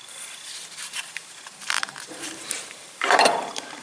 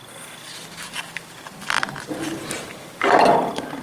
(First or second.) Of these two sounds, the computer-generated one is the first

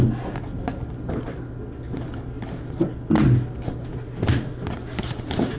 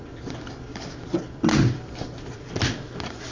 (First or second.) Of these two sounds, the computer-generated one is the second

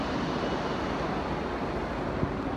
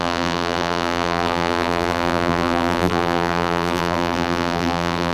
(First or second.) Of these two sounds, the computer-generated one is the second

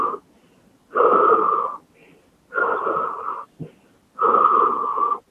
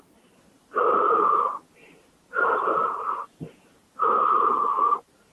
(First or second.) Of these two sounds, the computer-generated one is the second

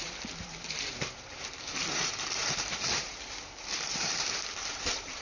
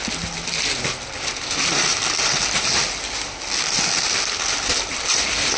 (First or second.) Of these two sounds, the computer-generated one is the first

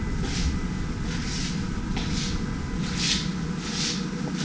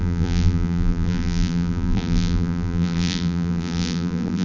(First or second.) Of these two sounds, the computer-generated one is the second